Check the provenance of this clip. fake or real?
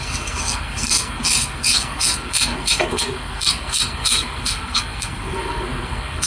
fake